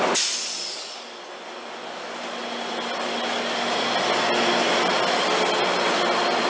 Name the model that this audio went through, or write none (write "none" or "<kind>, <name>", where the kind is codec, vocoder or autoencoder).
none